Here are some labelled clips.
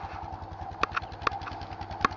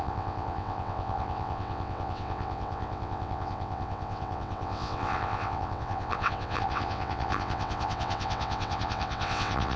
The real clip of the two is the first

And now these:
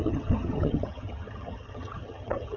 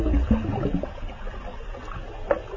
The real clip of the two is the second